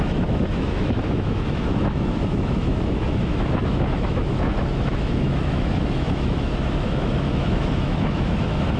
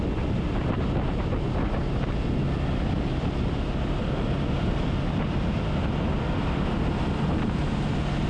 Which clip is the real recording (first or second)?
second